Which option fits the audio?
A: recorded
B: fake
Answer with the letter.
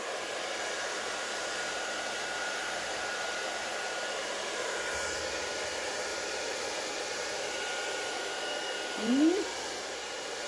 B